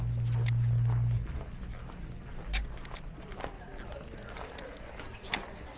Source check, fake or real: real